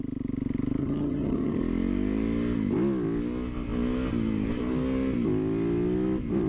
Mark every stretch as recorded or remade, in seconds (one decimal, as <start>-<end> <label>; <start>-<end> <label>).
0.0-0.8 recorded; 0.8-1.6 remade; 1.6-6.5 recorded